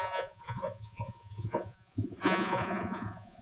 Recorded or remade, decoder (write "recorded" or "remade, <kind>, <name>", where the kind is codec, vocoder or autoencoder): remade, vocoder, Vocos